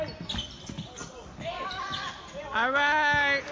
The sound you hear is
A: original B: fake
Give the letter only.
A